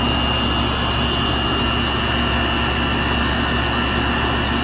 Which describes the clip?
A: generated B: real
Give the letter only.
B